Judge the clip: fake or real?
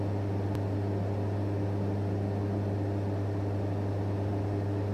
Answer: real